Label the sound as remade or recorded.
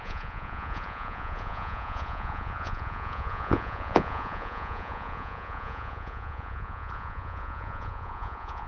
remade